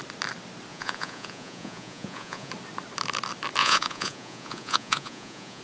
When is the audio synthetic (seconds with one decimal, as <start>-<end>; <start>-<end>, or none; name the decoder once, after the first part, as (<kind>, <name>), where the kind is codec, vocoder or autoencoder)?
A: 0.7-2.5 (vocoder, Vocos); 3.6-5.6